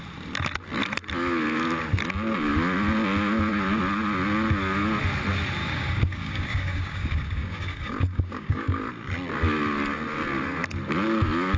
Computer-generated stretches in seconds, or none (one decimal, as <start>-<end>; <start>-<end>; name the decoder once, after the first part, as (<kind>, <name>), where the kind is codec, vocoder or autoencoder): 5.6-8.8 (codec, DAC)